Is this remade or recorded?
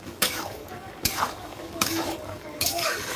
remade